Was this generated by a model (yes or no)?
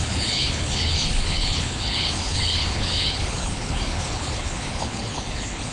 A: yes